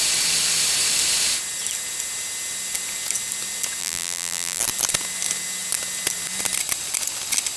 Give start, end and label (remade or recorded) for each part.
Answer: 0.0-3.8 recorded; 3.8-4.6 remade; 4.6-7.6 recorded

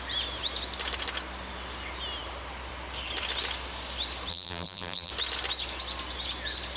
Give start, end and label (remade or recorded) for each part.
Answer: 0.0-4.3 recorded; 4.3-5.1 remade; 5.1-6.8 recorded

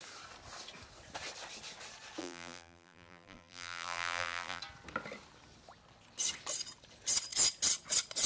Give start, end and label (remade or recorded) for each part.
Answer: 0.0-2.2 recorded; 2.2-4.6 remade; 4.6-8.3 recorded

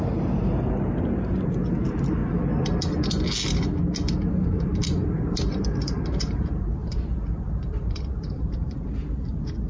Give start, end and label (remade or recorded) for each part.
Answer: 0.0-2.2 remade; 2.2-4.3 recorded; 4.3-9.7 remade

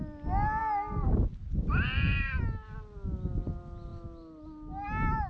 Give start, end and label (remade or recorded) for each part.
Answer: 0.0-0.6 recorded; 0.6-2.4 remade; 2.4-5.3 recorded

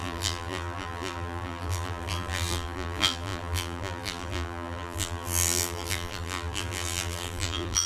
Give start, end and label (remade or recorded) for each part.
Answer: 0.0-7.9 remade

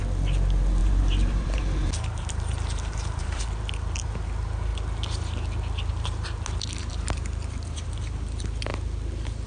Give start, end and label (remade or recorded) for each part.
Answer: 0.0-0.8 recorded; 0.8-3.4 remade; 3.4-6.8 recorded; 6.8-7.9 remade; 7.9-9.5 recorded

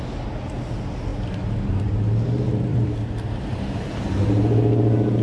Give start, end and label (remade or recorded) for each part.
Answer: 0.0-2.7 recorded; 2.7-3.3 remade; 3.3-5.2 recorded